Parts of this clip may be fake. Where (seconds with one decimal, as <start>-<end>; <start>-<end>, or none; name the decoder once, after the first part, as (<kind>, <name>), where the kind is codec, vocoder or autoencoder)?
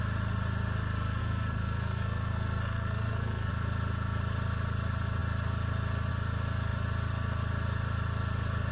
1.2-3.5 (codec, SNAC)